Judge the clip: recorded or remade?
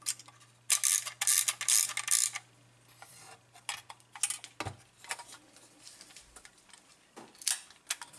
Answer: recorded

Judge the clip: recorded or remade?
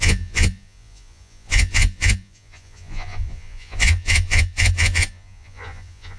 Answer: remade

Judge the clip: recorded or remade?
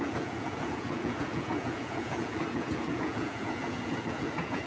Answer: remade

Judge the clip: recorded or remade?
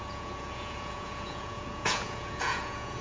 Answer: remade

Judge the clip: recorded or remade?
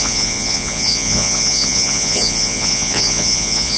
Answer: remade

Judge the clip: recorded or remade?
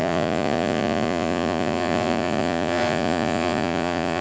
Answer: remade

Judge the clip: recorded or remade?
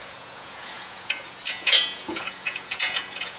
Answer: remade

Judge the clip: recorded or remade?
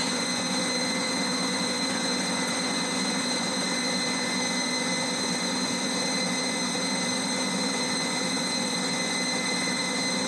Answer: remade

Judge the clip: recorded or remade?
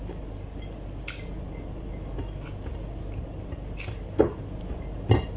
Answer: recorded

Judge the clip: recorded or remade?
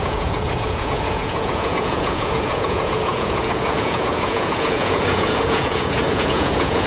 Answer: remade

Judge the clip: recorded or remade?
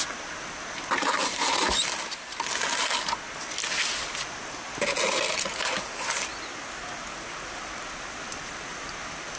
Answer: recorded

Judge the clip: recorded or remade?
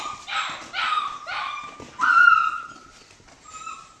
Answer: recorded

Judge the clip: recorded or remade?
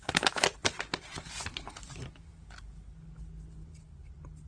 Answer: recorded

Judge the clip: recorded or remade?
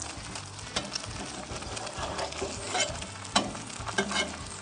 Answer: recorded